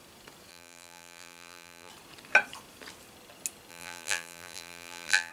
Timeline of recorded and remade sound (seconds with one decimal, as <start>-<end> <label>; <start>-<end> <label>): 0.0-0.5 recorded; 0.5-1.9 remade; 1.9-3.7 recorded; 3.7-5.3 remade